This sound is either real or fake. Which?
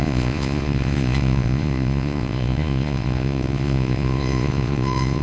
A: fake